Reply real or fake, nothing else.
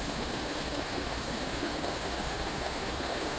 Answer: fake